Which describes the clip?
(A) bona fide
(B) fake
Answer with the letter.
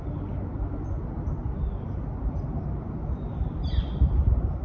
A